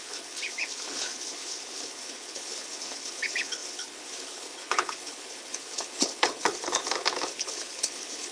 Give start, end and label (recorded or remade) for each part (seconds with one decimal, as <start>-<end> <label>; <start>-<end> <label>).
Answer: 0.0-8.3 remade

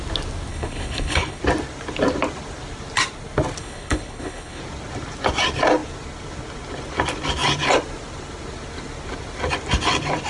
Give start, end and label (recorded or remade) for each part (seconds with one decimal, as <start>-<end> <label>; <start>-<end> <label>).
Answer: 0.0-0.5 recorded; 0.5-1.4 remade; 1.4-3.6 recorded; 3.6-4.6 remade; 4.6-10.3 recorded

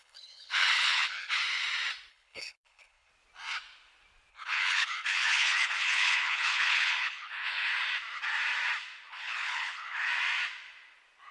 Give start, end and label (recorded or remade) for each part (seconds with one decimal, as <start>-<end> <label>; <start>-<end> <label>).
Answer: 0.0-1.4 remade; 1.4-2.1 recorded; 2.1-3.1 remade; 3.1-4.3 recorded; 4.3-7.7 remade; 7.7-9.1 recorded; 9.1-10.1 remade; 10.1-11.3 recorded

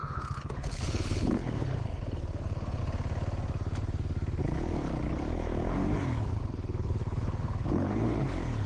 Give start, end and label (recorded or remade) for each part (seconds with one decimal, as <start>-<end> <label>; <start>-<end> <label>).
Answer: 0.0-2.8 remade; 2.8-4.4 recorded; 4.4-8.7 remade